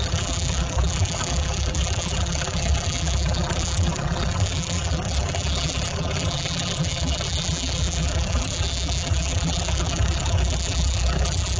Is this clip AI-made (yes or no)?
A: yes